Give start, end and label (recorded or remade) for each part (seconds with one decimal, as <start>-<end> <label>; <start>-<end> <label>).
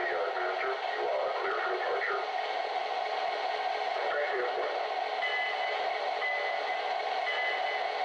0.0-8.0 recorded